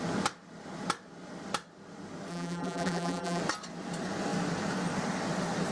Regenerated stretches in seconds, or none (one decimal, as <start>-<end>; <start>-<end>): 2.3-3.4